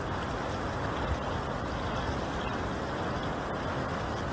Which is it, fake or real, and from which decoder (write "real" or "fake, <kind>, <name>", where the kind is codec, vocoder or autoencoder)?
real